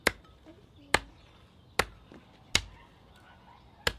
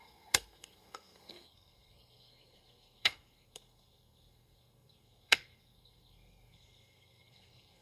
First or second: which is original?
first